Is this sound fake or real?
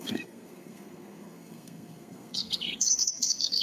fake